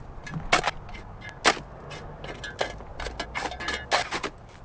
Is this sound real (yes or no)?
yes